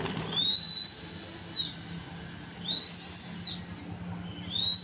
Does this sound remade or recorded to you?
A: recorded